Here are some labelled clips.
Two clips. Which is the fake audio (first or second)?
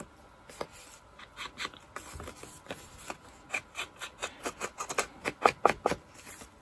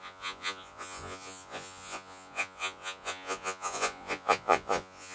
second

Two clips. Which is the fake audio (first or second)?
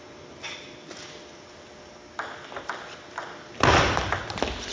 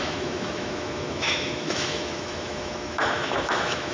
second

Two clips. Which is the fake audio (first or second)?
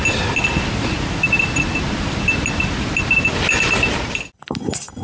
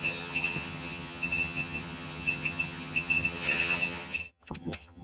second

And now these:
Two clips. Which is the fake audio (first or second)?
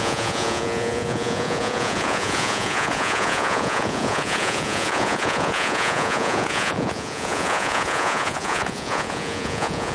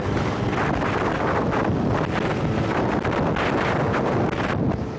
first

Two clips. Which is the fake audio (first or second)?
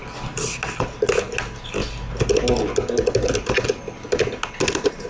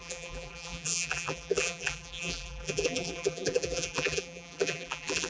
second